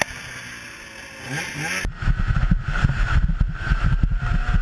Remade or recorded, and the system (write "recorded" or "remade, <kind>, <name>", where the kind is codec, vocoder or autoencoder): recorded